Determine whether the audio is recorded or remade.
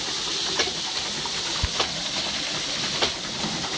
recorded